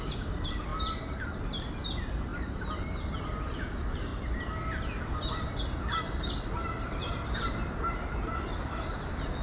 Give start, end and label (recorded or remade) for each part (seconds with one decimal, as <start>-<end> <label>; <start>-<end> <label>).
0.0-4.1 remade; 4.1-5.0 recorded; 5.0-9.4 remade